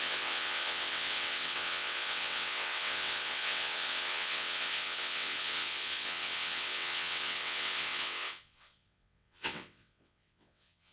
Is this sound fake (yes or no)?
yes